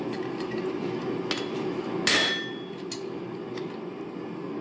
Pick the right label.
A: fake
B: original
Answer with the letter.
B